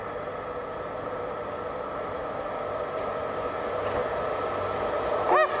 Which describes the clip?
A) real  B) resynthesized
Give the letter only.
A